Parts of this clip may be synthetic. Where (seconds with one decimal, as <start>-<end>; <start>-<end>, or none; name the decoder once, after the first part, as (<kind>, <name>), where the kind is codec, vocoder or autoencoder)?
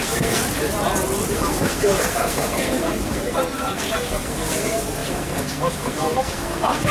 0.0-0.4 (codec, SNAC); 1.3-6.9